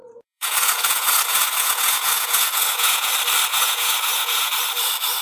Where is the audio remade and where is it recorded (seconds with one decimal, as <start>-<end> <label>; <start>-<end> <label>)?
0.0-3.1 remade; 3.1-3.5 recorded; 3.5-4.5 remade; 4.5-5.2 recorded